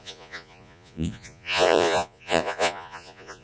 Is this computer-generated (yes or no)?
yes